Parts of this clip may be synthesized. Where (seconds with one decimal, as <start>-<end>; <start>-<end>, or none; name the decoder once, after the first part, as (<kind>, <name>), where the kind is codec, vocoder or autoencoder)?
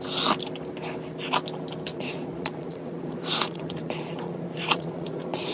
1.9-5.5 (vocoder, Vocos)